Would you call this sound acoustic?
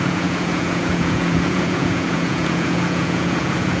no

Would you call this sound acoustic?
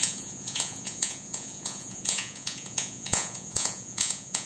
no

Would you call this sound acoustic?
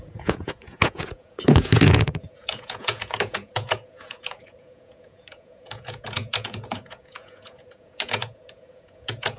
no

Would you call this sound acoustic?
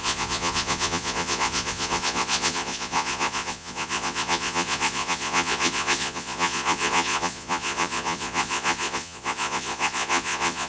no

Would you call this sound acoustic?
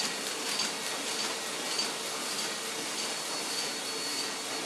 yes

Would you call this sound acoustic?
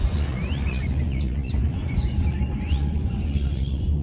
no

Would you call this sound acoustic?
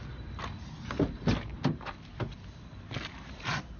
yes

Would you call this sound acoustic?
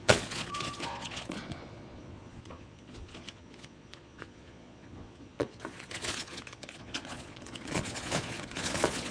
no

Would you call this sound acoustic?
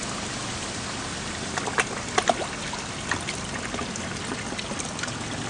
yes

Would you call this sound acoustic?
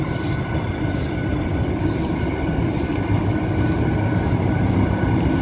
yes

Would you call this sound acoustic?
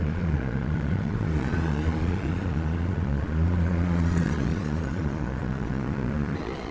no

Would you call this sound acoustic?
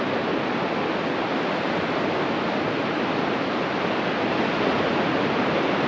yes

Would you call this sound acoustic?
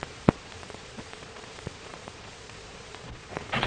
no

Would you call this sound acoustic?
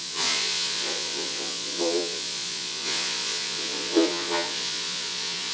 no